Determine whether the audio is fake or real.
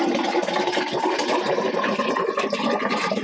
real